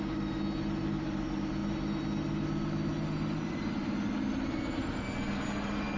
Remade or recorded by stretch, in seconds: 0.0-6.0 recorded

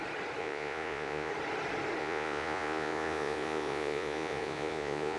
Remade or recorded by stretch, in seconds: 0.0-0.4 recorded; 0.4-1.3 remade; 1.3-2.0 recorded; 2.0-5.2 remade

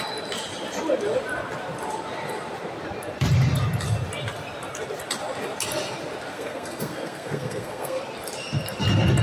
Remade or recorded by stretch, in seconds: 0.0-6.3 recorded; 6.3-8.0 remade; 8.0-9.2 recorded

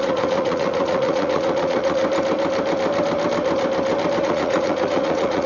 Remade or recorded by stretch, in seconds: 0.0-2.0 remade; 2.0-4.2 recorded; 4.2-5.5 remade

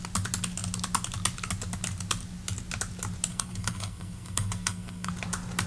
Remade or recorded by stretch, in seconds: 0.0-3.3 recorded; 3.3-5.1 remade; 5.1-5.7 recorded

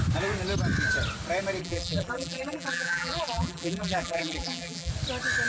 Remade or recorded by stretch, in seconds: 0.0-1.6 recorded; 1.6-4.9 remade; 4.9-5.5 recorded

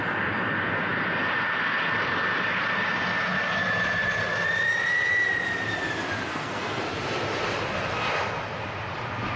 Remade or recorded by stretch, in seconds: 0.0-6.3 recorded; 6.3-6.8 remade; 6.8-9.4 recorded